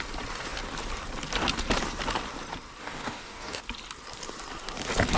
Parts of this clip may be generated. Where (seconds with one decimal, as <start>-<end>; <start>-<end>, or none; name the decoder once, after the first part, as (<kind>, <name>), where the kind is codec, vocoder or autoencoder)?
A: 2.8-3.6 (codec, DAC)